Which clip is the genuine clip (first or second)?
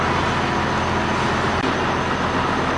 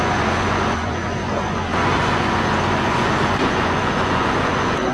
first